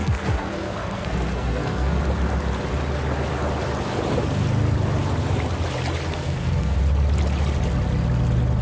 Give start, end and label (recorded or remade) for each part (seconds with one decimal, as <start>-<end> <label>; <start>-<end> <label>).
0.0-2.0 remade; 2.0-6.1 recorded; 6.1-6.8 remade; 6.8-8.6 recorded